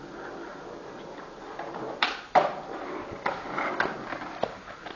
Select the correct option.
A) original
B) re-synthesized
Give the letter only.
A